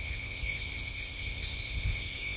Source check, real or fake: fake